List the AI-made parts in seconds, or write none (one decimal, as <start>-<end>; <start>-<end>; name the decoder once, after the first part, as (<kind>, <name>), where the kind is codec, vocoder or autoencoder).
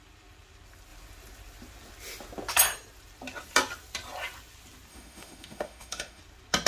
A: 4.9-6.2 (autoencoder, DAC-VAE)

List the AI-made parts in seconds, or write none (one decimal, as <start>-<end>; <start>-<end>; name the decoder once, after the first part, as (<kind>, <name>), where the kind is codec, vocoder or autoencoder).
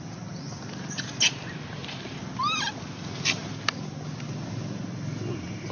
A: none